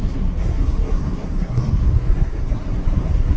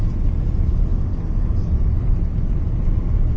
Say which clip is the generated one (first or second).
first